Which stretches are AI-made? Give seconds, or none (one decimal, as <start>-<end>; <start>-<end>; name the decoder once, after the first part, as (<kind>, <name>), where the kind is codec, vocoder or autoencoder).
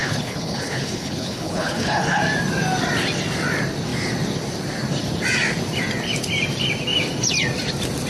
0.0-2.2 (codec, HILCodec)